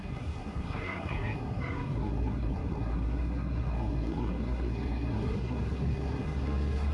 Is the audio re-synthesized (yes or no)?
yes